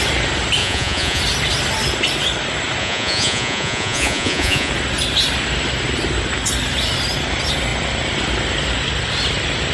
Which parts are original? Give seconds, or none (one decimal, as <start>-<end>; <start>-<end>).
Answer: 0.0-0.6; 1.2-2.8; 4.7-9.7